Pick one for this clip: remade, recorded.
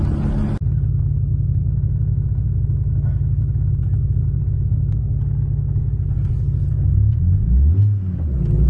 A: recorded